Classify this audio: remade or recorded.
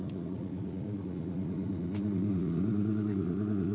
remade